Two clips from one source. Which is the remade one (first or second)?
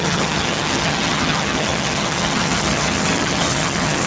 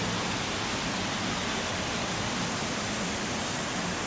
first